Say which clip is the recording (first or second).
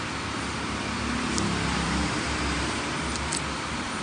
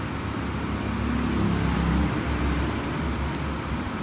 second